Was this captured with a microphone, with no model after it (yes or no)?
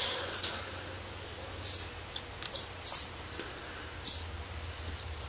yes